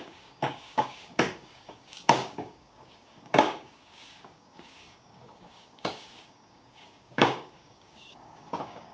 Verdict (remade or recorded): remade